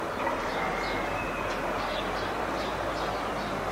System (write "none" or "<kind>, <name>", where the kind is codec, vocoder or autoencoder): none